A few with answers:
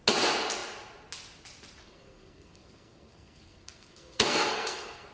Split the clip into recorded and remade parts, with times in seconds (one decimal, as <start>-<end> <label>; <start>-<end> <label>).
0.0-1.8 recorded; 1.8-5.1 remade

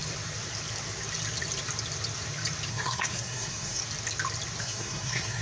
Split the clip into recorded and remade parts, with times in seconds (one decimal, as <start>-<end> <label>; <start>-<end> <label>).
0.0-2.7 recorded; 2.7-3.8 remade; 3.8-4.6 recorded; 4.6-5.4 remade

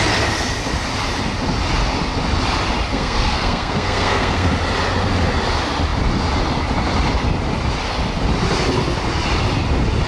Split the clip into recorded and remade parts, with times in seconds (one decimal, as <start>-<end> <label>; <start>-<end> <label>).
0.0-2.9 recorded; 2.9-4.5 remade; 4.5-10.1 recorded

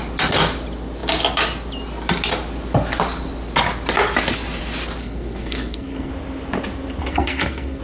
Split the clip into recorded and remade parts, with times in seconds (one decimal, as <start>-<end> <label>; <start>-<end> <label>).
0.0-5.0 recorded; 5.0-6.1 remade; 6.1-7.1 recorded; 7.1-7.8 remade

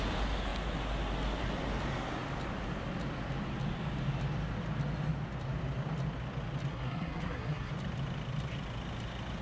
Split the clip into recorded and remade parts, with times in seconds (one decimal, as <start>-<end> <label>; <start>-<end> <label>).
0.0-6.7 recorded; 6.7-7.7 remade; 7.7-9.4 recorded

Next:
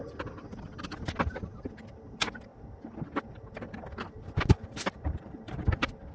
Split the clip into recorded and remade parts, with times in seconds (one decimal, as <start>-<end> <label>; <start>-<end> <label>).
0.0-6.1 recorded

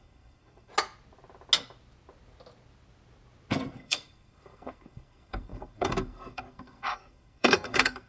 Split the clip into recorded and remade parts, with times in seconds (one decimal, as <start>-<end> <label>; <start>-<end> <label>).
0.0-0.7 remade; 0.7-3.5 recorded; 3.5-8.1 remade

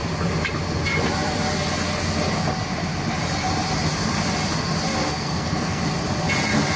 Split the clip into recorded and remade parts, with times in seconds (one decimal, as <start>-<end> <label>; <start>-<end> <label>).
0.0-5.1 recorded; 5.1-5.8 remade; 5.8-6.8 recorded